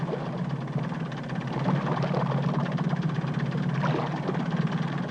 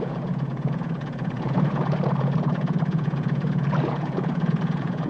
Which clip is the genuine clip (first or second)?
first